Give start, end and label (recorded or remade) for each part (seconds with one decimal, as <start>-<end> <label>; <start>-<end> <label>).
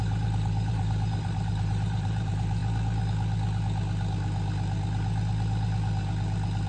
0.0-2.6 remade; 2.6-6.7 recorded